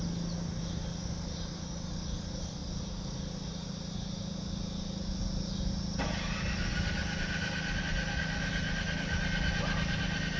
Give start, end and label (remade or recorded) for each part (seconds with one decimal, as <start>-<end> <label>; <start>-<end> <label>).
0.0-10.4 recorded

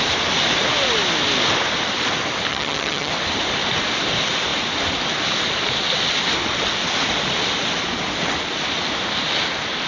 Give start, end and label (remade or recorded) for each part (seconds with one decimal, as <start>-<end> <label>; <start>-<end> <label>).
0.0-2.5 recorded; 2.5-3.1 remade; 3.1-9.9 recorded

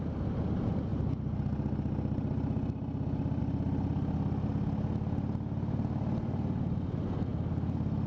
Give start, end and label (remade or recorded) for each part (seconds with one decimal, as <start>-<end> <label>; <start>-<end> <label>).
0.0-8.1 recorded

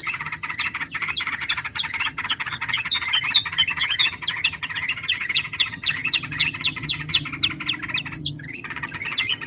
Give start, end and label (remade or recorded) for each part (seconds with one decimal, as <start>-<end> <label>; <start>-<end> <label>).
0.0-7.3 remade; 7.3-8.2 recorded; 8.2-9.5 remade

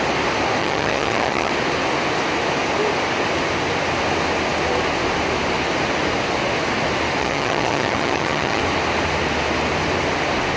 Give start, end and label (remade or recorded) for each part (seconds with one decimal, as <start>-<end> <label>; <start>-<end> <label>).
0.0-0.6 recorded; 0.6-1.5 remade; 1.5-7.2 recorded; 7.2-8.6 remade; 8.6-10.6 recorded

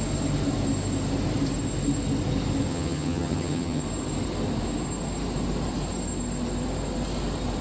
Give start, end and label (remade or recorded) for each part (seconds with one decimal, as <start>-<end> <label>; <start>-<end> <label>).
0.0-2.7 recorded; 2.7-3.8 remade; 3.8-7.6 recorded